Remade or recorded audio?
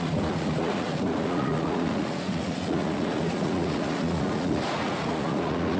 remade